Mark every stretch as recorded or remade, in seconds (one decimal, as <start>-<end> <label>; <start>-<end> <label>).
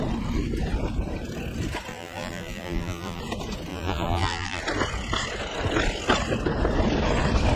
0.0-1.9 recorded; 1.9-3.2 remade; 3.2-3.7 recorded; 3.7-4.6 remade; 4.6-7.6 recorded